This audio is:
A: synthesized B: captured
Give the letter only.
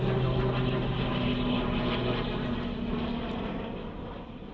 B